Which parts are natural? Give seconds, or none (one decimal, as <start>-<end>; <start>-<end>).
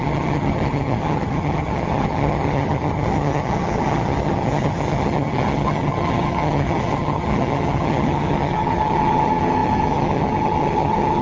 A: none